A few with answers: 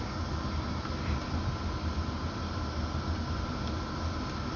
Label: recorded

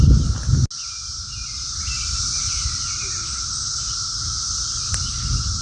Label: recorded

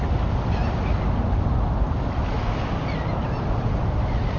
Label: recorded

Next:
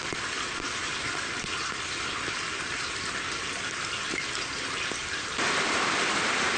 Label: recorded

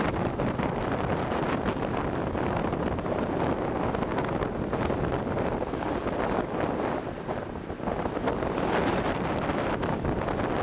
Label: recorded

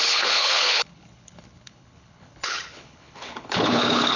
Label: remade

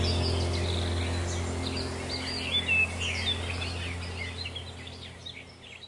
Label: recorded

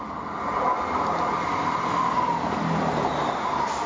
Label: recorded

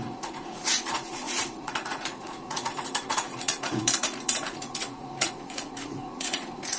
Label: remade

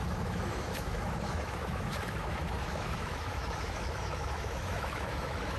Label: remade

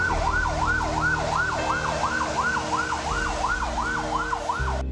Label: recorded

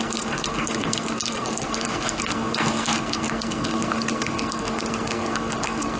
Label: remade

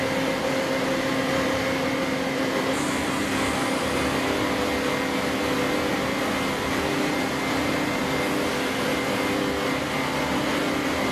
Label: recorded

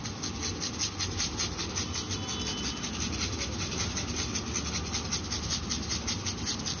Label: recorded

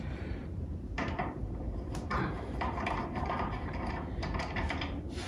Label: remade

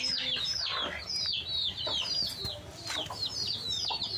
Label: recorded